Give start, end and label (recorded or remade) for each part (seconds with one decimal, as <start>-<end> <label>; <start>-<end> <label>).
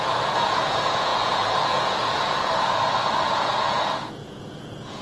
0.0-5.0 remade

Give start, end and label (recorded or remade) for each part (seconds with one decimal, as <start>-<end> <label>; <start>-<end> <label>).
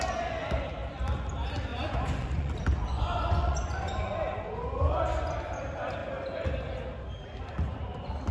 0.0-1.7 recorded; 1.7-2.5 remade; 2.5-2.9 recorded; 2.9-4.4 remade; 4.4-8.3 recorded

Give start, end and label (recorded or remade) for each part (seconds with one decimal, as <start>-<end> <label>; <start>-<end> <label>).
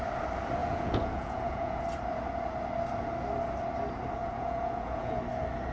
0.0-0.6 recorded; 0.6-1.8 remade; 1.8-4.2 recorded; 4.2-5.2 remade; 5.2-5.7 recorded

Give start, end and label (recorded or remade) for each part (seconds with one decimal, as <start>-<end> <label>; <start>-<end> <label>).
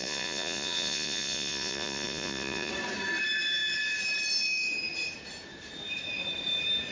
0.0-2.7 remade; 2.7-6.9 recorded